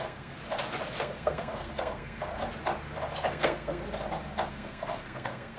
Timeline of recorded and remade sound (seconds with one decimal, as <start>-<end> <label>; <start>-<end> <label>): 0.0-0.4 remade; 0.4-1.0 recorded; 1.0-2.4 remade; 2.4-3.3 recorded; 3.3-3.8 remade; 3.8-4.5 recorded; 4.5-5.6 remade